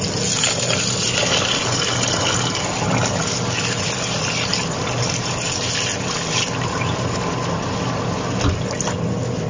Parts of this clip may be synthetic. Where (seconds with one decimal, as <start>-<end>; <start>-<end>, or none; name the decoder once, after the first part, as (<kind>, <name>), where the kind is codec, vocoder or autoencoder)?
none